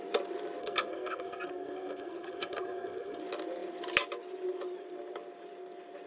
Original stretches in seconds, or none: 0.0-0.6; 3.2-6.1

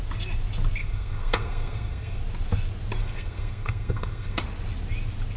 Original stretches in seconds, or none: 0.0-0.8; 2.2-3.0; 4.4-5.4

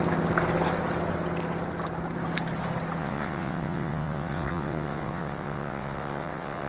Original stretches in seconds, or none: 0.0-3.0

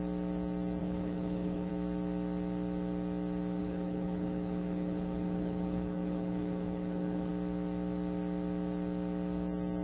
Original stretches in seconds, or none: 0.0-0.8; 1.7-3.6; 7.3-9.8